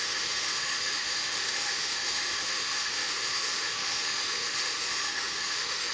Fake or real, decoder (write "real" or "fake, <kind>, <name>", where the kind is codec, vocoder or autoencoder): fake, autoencoder, DAC-VAE